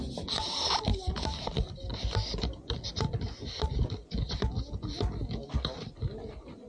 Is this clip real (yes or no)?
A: yes